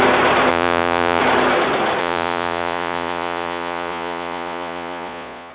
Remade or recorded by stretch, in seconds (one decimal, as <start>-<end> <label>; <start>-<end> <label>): 0.0-0.5 recorded; 0.5-1.2 remade; 1.2-2.0 recorded; 2.0-5.5 remade